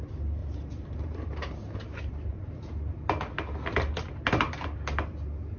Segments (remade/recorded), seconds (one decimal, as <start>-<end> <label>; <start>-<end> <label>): 0.0-0.4 recorded; 0.4-2.4 remade; 2.4-5.6 recorded